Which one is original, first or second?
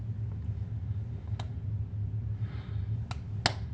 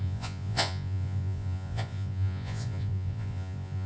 first